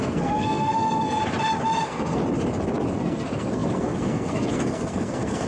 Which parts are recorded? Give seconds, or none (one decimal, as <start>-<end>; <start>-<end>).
1.2-1.8; 2.2-3.0